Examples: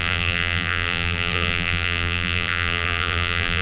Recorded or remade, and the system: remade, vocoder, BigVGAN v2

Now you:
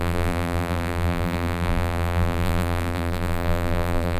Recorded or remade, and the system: remade, vocoder, BigVGAN v2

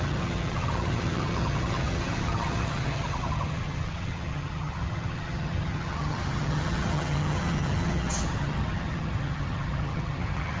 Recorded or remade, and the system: remade, vocoder, HiFi-GAN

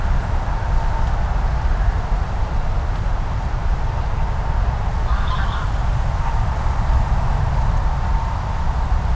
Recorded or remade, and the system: recorded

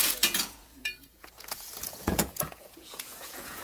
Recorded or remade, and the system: remade, vocoder, Vocos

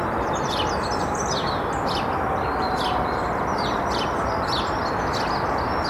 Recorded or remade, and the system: recorded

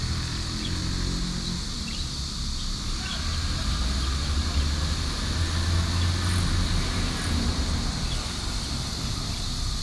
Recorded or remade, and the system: recorded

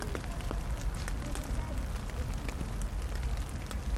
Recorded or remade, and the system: recorded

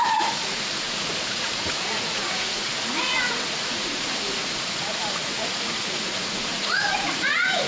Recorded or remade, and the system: remade, vocoder, Vocos